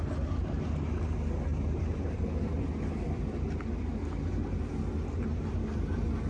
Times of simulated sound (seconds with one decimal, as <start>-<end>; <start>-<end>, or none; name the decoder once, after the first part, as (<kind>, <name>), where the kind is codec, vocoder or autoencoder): 1.5-2.5 (vocoder, BigVGAN v2)